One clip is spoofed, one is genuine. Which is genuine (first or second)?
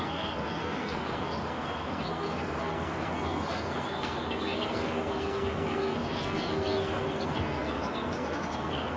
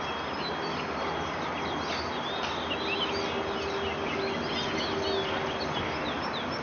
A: second